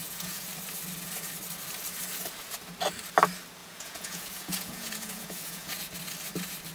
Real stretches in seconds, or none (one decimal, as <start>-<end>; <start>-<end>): 0.5-3.6; 5.7-6.7